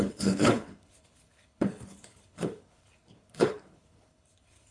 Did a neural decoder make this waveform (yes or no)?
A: yes